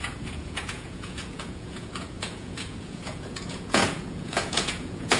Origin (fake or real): fake